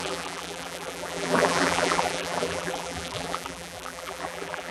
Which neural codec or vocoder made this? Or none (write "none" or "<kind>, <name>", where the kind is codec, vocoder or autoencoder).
vocoder, BigVGAN v2